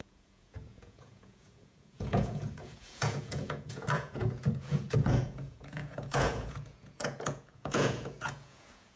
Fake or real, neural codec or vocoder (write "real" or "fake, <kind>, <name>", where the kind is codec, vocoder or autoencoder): fake, vocoder, Vocos